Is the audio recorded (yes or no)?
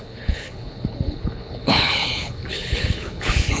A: no